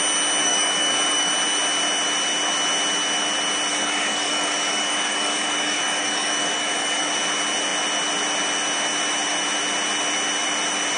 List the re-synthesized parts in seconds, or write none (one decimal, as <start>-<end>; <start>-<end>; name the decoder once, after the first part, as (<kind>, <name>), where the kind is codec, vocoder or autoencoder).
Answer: 0.4-1.3 (codec, DAC); 3.7-7.1